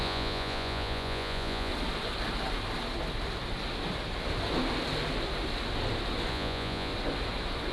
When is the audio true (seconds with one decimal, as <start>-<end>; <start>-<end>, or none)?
1.7-6.3; 6.9-7.7